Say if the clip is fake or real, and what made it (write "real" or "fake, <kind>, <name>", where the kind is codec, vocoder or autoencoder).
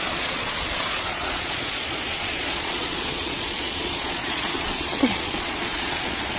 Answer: fake, vocoder, Vocos